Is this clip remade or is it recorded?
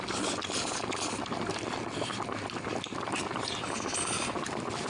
recorded